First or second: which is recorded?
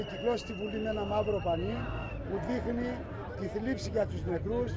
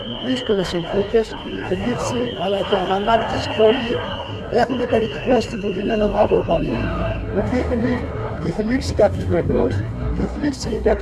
first